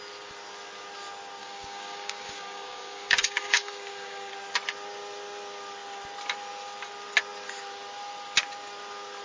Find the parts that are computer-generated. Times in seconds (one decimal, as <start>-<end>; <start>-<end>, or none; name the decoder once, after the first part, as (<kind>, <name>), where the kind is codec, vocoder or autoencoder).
1.4-4.3 (codec, DAC)